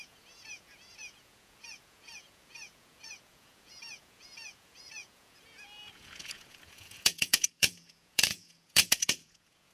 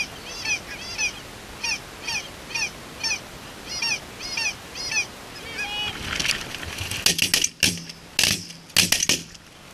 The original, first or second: second